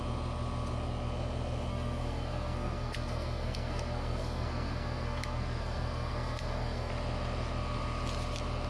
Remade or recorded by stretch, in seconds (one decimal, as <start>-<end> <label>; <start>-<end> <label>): 0.0-1.7 recorded; 1.7-6.9 remade; 6.9-8.7 recorded